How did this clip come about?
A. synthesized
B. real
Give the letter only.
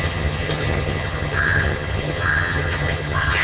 A